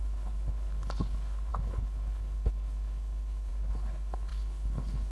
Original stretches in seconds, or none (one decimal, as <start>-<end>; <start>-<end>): none